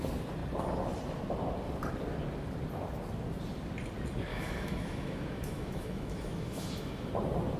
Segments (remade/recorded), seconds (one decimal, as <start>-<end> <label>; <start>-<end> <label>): 0.0-4.3 recorded; 4.3-7.1 remade; 7.1-7.6 recorded